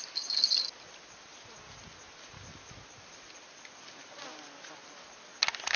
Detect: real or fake real